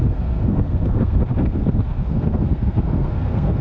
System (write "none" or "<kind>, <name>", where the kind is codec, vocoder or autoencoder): codec, SNAC